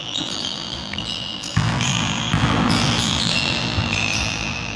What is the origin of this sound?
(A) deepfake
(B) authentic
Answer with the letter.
A